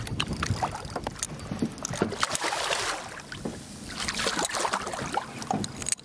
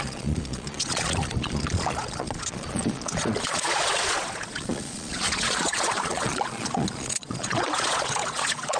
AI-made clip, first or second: second